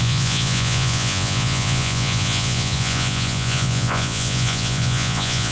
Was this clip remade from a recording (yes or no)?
yes